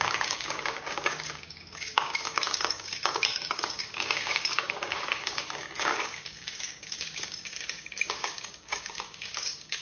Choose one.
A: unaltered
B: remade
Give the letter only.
B